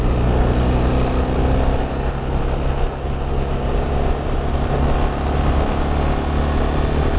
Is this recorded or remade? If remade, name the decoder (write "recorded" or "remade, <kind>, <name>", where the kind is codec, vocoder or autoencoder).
recorded